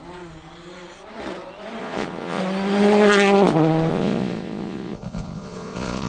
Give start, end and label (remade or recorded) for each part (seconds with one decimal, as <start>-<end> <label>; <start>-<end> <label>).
0.0-1.8 recorded; 1.8-2.4 remade; 2.4-3.9 recorded; 3.9-6.1 remade